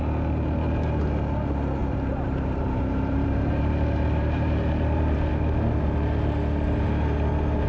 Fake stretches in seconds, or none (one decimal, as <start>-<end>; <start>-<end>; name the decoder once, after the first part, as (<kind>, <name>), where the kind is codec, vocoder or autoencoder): 1.8-5.3 (vocoder, BigVGAN v2)